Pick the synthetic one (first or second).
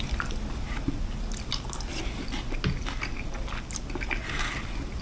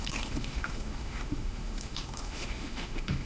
second